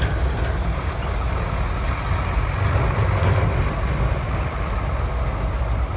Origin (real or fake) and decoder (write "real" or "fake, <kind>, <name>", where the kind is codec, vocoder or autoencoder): real